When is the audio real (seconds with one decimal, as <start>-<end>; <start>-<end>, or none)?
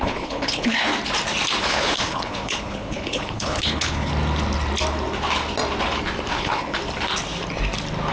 0.9-1.6; 4.1-6.3; 6.8-8.1